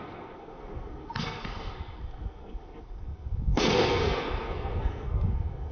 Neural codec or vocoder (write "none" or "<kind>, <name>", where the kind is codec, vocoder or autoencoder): codec, SNAC